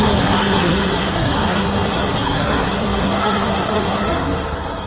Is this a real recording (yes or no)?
no